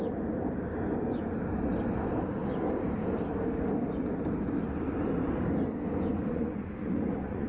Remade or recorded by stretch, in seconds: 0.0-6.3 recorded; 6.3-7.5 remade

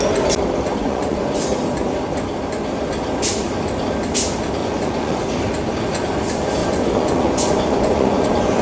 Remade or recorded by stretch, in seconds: 0.0-0.8 recorded; 0.8-1.4 remade; 1.4-4.6 recorded; 4.6-5.2 remade; 5.2-6.6 recorded; 6.6-8.6 remade

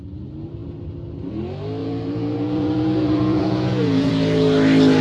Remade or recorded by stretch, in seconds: 0.0-1.8 recorded; 1.8-4.1 remade; 4.1-5.0 recorded